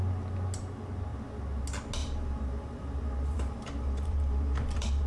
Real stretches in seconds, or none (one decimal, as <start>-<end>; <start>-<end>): 0.0-2.0